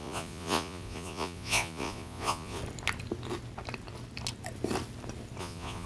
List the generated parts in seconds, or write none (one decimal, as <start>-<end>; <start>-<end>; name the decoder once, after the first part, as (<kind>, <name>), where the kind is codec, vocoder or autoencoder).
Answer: 0.0-2.6 (vocoder, Vocos); 5.4-5.9